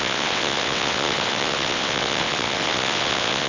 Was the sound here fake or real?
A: fake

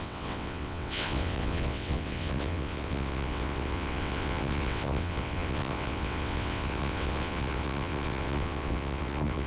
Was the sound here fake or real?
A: fake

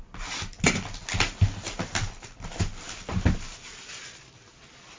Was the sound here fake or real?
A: real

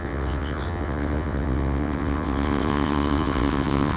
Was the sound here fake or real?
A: fake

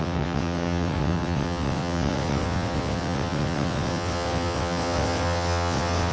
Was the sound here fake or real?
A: fake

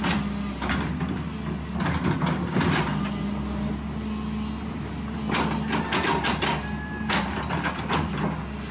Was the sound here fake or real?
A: real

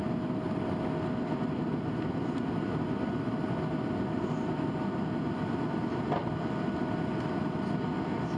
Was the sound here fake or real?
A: real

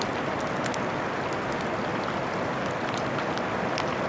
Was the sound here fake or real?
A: real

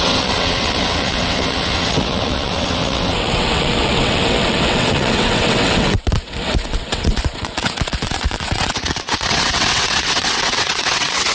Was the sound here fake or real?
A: fake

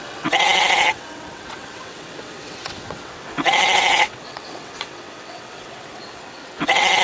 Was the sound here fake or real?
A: fake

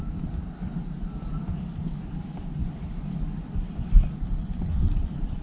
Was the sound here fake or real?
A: real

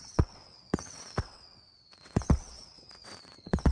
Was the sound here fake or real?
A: fake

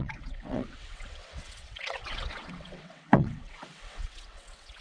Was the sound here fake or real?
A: fake